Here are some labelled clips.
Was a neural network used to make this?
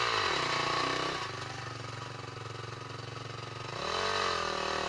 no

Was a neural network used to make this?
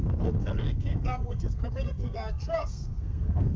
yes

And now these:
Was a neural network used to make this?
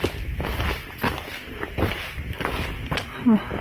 no